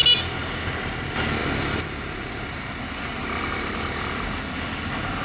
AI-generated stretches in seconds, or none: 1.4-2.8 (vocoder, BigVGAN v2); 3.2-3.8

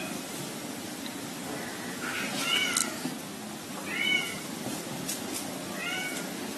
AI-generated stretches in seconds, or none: 4.7-5.3 (vocoder, BigVGAN v2)

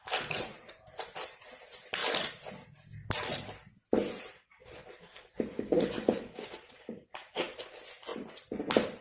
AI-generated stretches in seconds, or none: 0.0-2.0 (vocoder, BigVGAN v2); 4.2-9.0

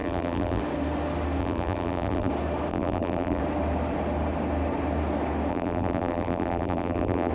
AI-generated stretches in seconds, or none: 0.0-0.6 (vocoder, BigVGAN v2); 1.4-2.3; 2.7-3.4; 5.5-7.3

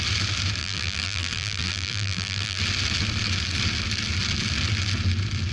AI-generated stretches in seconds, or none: 0.6-2.6 (vocoder, BigVGAN v2)